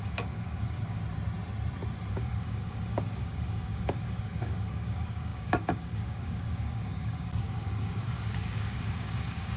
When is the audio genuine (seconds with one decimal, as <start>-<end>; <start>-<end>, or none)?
1.0-2.1